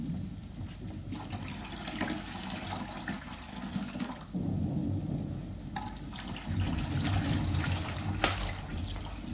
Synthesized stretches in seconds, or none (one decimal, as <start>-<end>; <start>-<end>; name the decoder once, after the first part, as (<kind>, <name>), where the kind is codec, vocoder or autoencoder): 3.5-4.1 (codec, SNAC)